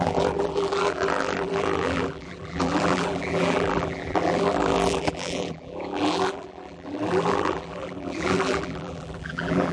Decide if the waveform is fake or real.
fake